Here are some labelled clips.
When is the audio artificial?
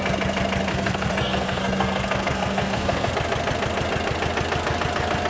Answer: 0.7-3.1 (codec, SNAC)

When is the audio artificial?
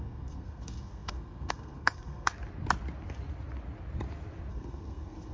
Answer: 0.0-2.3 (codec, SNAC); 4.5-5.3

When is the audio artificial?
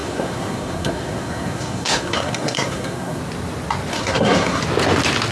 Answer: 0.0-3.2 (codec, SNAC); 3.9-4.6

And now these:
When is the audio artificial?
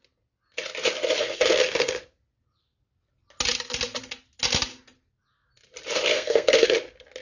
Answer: 1.2-2.0 (codec, SNAC); 6.1-6.7